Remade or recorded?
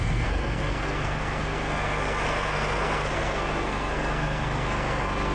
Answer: remade